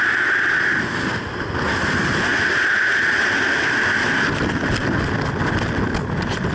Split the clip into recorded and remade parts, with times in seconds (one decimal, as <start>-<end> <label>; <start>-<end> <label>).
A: 0.0-6.5 recorded